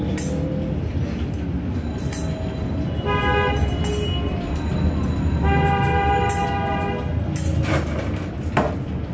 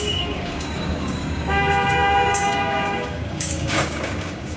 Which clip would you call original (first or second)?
first